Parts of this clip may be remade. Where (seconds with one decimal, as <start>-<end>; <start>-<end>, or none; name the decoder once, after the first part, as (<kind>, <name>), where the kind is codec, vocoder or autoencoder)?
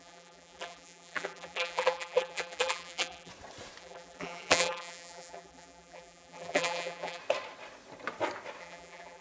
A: 0.0-3.3 (vocoder, BigVGAN v2); 3.8-7.2; 8.6-9.2